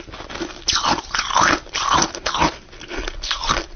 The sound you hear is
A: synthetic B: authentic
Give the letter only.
B